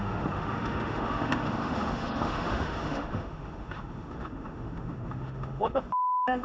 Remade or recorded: remade